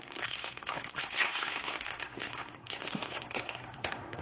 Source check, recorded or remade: remade